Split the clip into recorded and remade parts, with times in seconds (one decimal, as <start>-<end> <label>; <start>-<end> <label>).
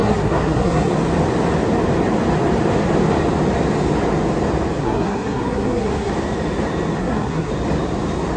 0.0-0.9 remade; 0.9-4.8 recorded; 4.8-6.1 remade; 6.1-7.0 recorded; 7.0-7.5 remade; 7.5-8.4 recorded